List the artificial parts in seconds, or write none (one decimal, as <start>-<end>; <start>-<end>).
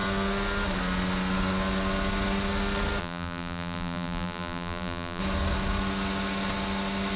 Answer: 3.0-5.2